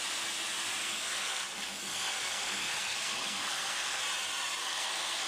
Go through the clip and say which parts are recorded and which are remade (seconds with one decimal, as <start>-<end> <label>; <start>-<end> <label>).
0.0-0.8 recorded; 0.8-4.0 remade; 4.0-4.6 recorded; 4.6-5.3 remade